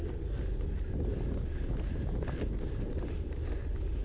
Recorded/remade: recorded